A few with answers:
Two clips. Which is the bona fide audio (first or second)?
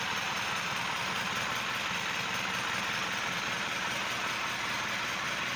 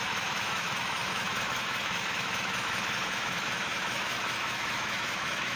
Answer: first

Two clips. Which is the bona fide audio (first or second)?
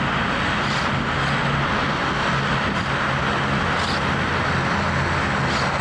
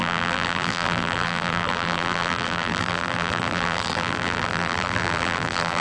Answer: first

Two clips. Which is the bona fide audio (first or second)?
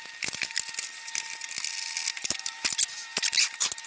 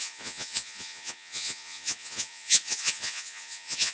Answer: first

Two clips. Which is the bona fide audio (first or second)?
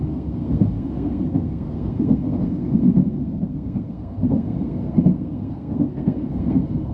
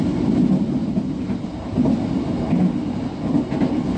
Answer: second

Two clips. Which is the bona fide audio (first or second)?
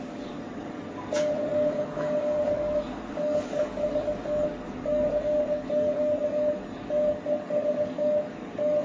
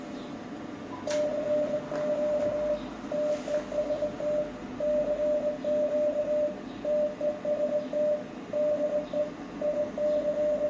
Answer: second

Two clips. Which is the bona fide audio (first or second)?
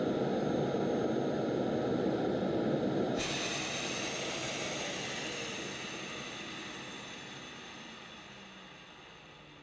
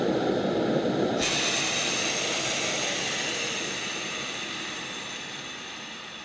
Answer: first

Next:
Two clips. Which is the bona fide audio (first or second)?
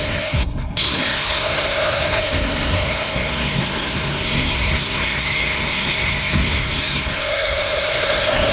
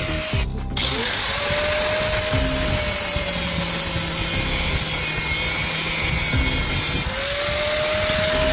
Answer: second